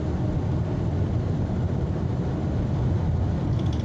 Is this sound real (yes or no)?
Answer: yes